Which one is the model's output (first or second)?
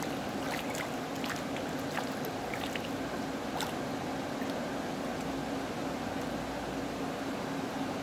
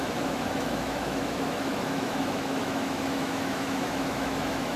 second